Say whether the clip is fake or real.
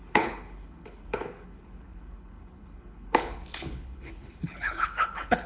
fake